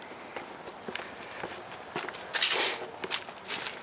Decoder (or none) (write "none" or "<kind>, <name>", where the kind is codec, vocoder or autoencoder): none